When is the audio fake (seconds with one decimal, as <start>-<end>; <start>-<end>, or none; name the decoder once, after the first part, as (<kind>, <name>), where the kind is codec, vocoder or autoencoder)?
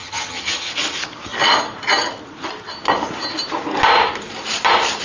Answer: 0.0-0.7 (vocoder, HiFi-GAN)